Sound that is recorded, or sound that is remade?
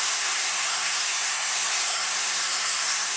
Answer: remade